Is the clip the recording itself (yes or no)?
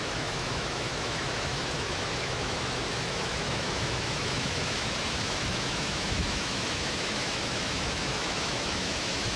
no